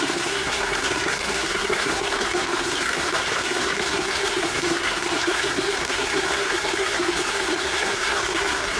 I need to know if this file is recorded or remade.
remade